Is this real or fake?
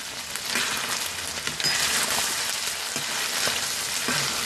real